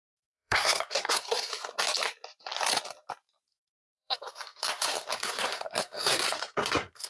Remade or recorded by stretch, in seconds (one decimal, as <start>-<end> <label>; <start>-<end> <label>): 0.0-1.5 remade; 1.5-3.5 recorded; 3.5-7.1 remade